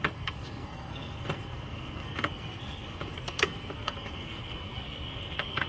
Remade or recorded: remade